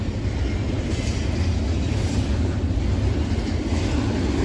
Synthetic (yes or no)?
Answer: no